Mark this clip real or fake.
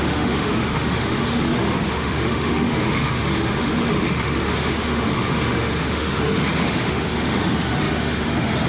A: fake